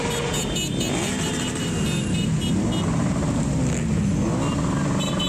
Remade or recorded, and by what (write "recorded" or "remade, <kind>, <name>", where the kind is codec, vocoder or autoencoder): recorded